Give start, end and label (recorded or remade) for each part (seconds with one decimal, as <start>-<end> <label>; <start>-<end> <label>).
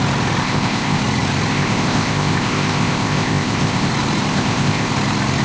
0.0-0.4 recorded; 0.4-1.0 remade; 1.0-1.5 recorded; 1.5-3.9 remade; 3.9-4.3 recorded; 4.3-4.9 remade; 4.9-5.4 recorded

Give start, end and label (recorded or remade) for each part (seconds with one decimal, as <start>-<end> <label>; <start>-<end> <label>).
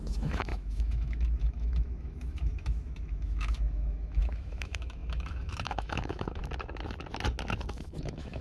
0.0-6.4 remade; 6.4-7.7 recorded; 7.7-8.4 remade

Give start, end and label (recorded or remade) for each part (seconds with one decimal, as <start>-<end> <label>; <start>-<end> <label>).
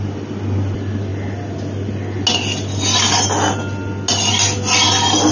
0.0-5.3 recorded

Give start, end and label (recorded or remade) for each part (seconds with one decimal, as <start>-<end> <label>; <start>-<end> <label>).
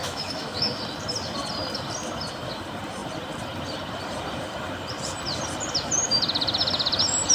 0.0-0.7 remade; 0.7-7.3 recorded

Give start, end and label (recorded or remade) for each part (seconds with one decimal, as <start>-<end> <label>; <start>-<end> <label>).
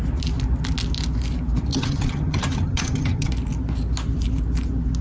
0.0-1.7 recorded; 1.7-3.3 remade; 3.3-5.0 recorded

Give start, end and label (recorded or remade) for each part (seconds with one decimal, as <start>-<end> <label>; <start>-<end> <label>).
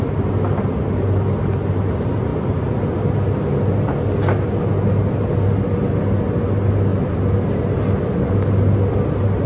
0.0-9.5 recorded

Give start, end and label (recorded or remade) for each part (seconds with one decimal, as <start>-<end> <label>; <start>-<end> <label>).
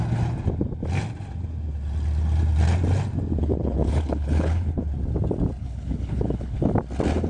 0.0-3.4 recorded; 3.4-4.8 remade; 4.8-5.6 recorded; 5.6-6.6 remade; 6.6-7.3 recorded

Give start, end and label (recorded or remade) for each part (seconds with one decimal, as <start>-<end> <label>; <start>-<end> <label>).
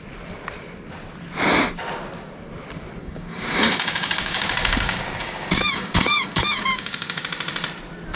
0.0-3.0 recorded; 3.0-7.2 remade; 7.2-8.2 recorded